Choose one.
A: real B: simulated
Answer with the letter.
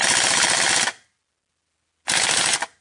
A